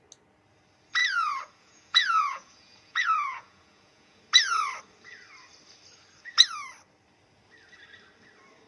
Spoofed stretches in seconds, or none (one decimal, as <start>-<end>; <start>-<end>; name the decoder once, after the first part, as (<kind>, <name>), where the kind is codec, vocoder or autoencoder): 1.0-4.2 (vocoder, Vocos)